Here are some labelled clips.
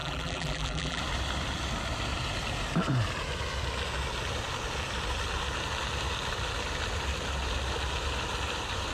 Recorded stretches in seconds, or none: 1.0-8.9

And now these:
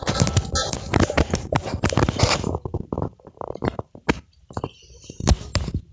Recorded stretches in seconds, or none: 0.0-0.9; 4.4-5.9

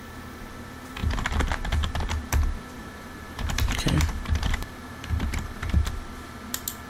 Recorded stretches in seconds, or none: 0.0-2.8; 5.9-6.9

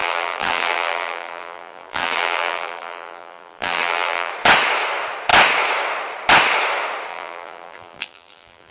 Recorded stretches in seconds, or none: 4.3-7.1

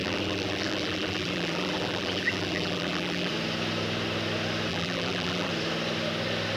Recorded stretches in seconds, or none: 3.3-4.7; 5.5-6.6